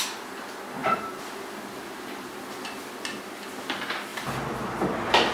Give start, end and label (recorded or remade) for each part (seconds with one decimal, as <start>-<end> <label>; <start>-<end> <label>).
0.0-0.8 recorded; 0.8-1.6 remade; 1.6-4.1 recorded; 4.1-5.3 remade

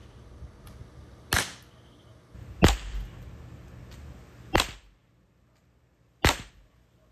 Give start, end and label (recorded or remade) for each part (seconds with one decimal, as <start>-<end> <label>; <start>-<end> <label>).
0.0-7.1 recorded

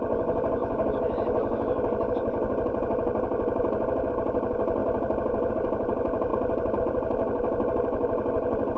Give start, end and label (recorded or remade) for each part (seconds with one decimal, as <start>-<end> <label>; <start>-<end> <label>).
0.0-6.3 recorded; 6.3-6.8 remade; 6.8-8.8 recorded